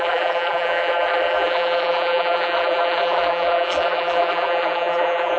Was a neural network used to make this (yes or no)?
yes